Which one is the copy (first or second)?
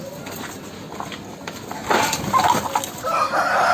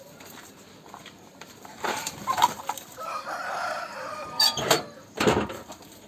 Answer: second